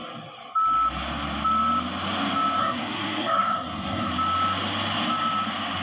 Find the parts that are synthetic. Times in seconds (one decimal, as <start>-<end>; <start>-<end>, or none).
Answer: 2.6-4.1